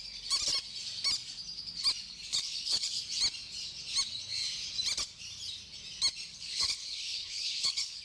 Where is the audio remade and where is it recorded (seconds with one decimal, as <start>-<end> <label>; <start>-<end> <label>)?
0.0-2.3 recorded; 2.3-2.9 remade; 2.9-6.3 recorded; 6.3-8.0 remade